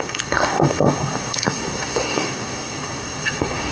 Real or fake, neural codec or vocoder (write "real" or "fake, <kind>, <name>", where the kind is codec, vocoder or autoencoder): fake, codec, SNAC